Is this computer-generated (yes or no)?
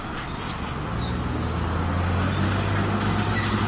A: no